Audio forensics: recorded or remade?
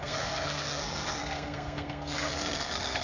remade